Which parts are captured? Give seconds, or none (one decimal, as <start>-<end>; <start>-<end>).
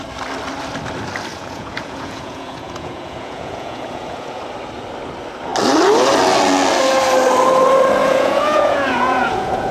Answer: 0.0-1.3; 4.4-8.0